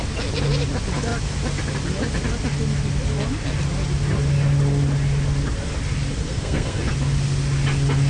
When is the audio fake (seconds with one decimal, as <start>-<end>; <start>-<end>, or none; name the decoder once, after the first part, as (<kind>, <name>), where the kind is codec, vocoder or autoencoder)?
6.3-6.8 (codec, SNAC)

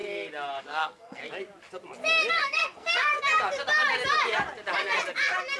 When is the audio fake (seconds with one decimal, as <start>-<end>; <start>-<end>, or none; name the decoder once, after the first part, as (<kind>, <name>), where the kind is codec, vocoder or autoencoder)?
0.6-1.2 (codec, SNAC); 2.3-3.1

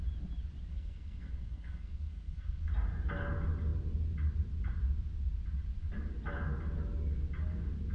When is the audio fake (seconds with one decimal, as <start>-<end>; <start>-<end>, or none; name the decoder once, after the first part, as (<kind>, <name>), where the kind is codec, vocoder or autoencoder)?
0.7-2.7 (codec, SNAC)